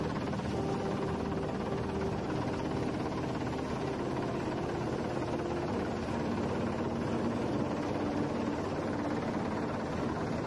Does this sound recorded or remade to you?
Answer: recorded